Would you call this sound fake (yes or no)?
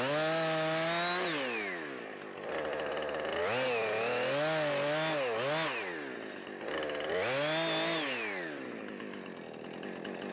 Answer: no